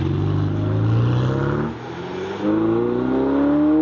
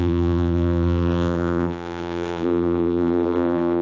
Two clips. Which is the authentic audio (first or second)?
first